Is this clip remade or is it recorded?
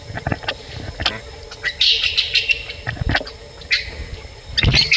recorded